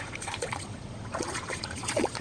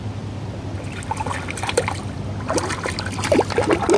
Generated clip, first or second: first